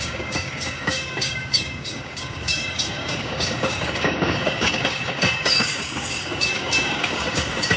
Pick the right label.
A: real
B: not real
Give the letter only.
B